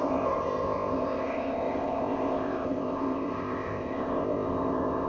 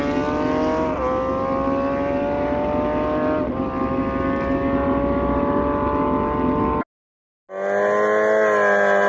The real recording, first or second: second